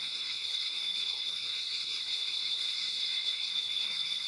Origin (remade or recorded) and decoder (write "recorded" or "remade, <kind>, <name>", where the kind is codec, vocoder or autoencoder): remade, codec, SNAC